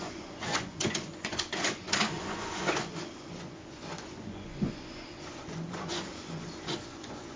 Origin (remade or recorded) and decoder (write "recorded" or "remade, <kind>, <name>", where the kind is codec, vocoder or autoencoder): remade, vocoder, Vocos